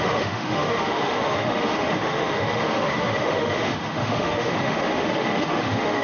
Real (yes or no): no